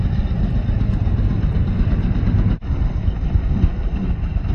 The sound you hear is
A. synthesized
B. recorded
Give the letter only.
B